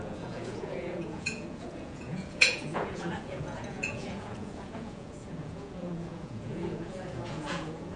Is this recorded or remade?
remade